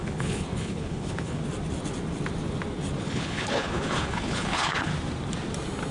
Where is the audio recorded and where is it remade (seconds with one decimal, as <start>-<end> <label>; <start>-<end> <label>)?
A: 0.0-1.4 remade; 1.4-3.0 recorded; 3.0-4.9 remade; 4.9-5.9 recorded

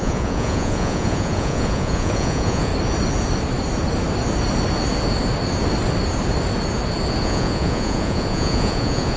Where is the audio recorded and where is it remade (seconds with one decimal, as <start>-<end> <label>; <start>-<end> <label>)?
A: 0.0-2.7 remade; 2.7-7.2 recorded; 7.2-9.2 remade

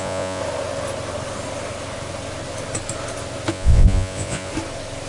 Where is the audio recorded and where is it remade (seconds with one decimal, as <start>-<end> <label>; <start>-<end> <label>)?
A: 0.0-0.4 remade; 0.4-3.5 recorded; 3.5-4.5 remade; 4.5-5.1 recorded

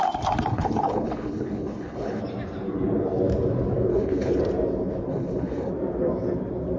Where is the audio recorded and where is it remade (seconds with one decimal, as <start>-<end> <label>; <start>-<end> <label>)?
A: 0.0-0.5 recorded; 0.5-2.2 remade; 2.2-3.9 recorded; 3.9-4.4 remade; 4.4-5.1 recorded; 5.1-5.7 remade; 5.7-6.8 recorded

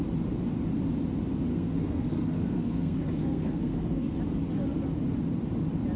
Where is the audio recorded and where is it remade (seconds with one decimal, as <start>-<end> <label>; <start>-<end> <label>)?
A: 0.0-1.5 recorded; 1.5-4.2 remade; 4.2-6.0 recorded

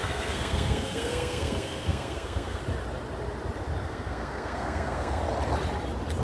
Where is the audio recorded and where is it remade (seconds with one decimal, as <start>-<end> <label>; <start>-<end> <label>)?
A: 0.0-2.6 remade; 2.6-3.8 recorded; 3.8-5.2 remade; 5.2-6.2 recorded

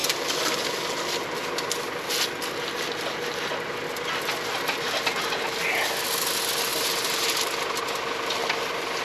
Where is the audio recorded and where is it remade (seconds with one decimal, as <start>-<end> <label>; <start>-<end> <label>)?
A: 0.0-6.7 recorded; 6.7-7.5 remade; 7.5-8.4 recorded; 8.4-9.0 remade